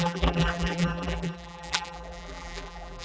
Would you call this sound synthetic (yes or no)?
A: yes